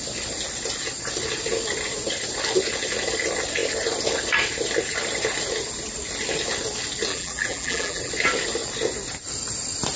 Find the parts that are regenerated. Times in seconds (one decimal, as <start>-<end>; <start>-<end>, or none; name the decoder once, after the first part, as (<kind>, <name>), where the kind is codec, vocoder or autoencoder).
7.1-8.1 (vocoder, BigVGAN v2)